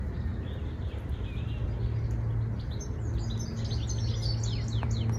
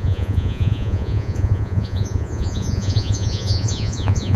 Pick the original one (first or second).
first